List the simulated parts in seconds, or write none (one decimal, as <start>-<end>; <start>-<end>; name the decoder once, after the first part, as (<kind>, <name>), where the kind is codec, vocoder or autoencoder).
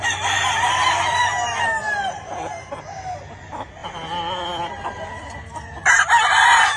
none